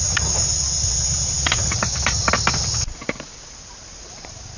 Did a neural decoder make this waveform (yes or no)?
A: no